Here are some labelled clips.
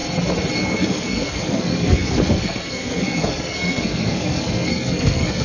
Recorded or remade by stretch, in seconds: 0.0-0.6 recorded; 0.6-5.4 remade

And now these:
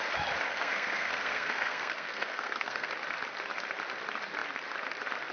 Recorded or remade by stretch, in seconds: 0.0-0.5 recorded; 0.5-2.9 remade; 2.9-5.3 recorded

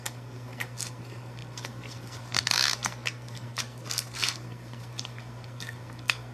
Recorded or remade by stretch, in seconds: 0.0-6.3 remade

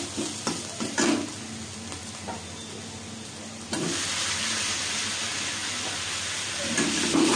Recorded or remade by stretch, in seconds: 0.0-7.4 recorded